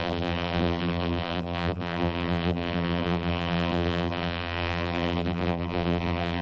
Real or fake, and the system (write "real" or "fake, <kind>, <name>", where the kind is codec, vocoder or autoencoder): fake, vocoder, BigVGAN v2